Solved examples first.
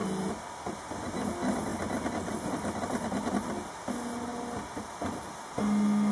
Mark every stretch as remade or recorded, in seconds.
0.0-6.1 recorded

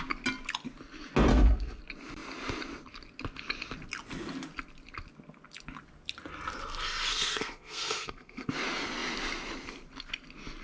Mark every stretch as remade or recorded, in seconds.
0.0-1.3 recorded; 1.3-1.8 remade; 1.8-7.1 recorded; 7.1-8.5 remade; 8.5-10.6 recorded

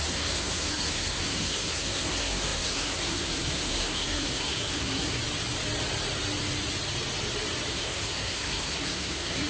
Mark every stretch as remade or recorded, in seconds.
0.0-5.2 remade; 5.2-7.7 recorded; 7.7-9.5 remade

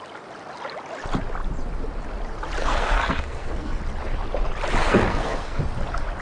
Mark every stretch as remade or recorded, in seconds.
0.0-2.6 recorded; 2.6-3.8 remade; 3.8-4.8 recorded; 4.8-5.6 remade; 5.6-6.2 recorded